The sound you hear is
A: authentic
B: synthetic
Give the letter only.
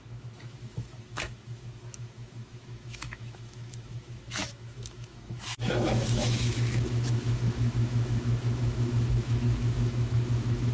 B